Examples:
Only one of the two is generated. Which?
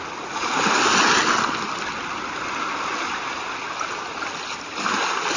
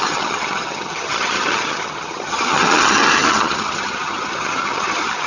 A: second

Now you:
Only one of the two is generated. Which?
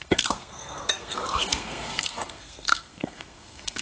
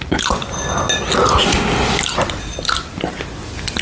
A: first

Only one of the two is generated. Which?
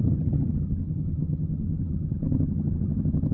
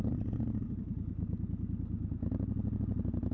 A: first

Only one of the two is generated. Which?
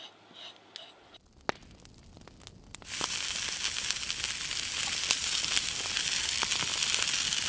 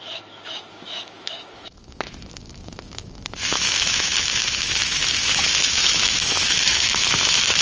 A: second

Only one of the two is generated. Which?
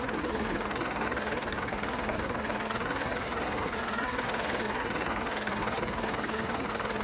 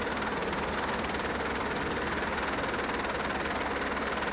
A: first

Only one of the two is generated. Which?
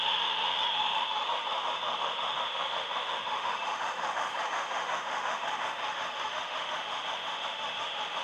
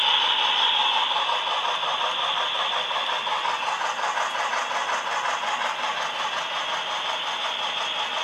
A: first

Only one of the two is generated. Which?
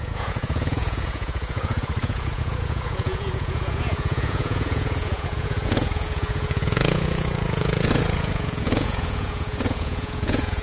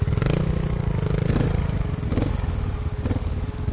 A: first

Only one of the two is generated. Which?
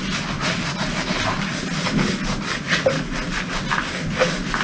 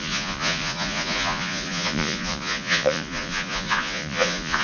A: second